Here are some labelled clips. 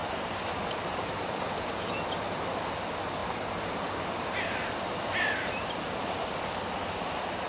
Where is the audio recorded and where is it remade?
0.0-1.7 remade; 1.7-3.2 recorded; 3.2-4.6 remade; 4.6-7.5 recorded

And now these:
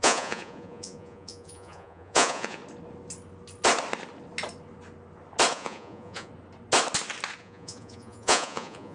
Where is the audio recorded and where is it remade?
0.0-2.6 remade; 2.6-5.5 recorded; 5.5-6.3 remade; 6.3-7.4 recorded; 7.4-8.9 remade

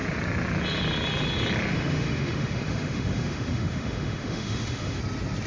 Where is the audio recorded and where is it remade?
0.0-1.7 recorded; 1.7-5.0 remade; 5.0-5.5 recorded

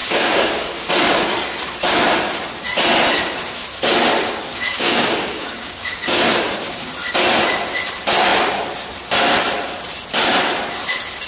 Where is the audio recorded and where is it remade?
0.0-0.9 remade; 0.9-4.5 recorded; 4.5-6.3 remade; 6.3-11.3 recorded

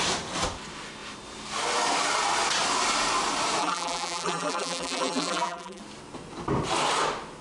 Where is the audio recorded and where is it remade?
0.0-3.6 recorded; 3.6-5.8 remade; 5.8-7.4 recorded

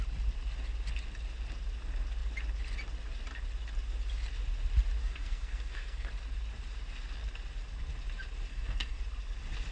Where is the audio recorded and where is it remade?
0.0-5.0 recorded; 5.0-6.1 remade; 6.1-8.5 recorded; 8.5-9.0 remade; 9.0-9.7 recorded